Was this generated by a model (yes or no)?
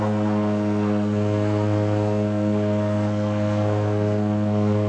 yes